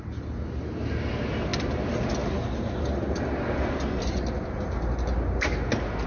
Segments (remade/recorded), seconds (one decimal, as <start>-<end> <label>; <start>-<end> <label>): 0.0-6.1 recorded